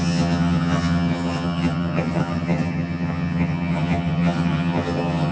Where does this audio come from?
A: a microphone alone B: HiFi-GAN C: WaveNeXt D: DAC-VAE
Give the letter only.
B